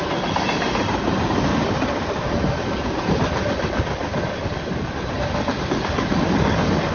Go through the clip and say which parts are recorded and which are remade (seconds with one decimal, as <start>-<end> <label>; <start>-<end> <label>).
0.0-1.5 recorded; 1.5-5.6 remade; 5.6-6.9 recorded